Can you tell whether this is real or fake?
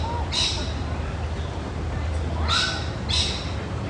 real